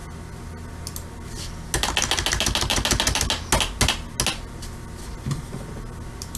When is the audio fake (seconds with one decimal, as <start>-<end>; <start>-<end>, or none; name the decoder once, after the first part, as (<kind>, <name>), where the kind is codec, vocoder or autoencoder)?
none